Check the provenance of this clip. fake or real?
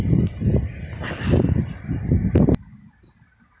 real